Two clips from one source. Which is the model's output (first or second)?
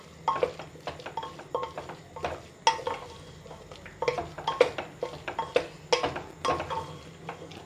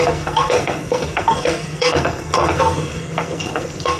second